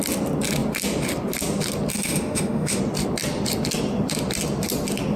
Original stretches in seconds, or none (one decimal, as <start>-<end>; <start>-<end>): 0.0-1.9; 2.8-5.2